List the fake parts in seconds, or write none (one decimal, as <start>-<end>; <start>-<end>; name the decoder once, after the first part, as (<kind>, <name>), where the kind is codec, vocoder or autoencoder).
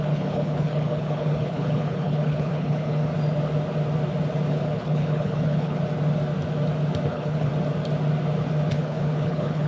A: 0.0-3.0 (codec, HILCodec); 4.5-5.8; 7.1-7.5; 8.7-9.7